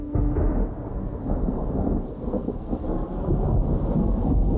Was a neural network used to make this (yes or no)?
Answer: yes